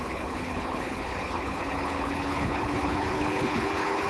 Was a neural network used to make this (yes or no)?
yes